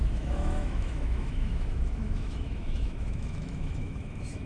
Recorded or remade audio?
remade